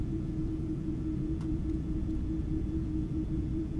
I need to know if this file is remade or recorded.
remade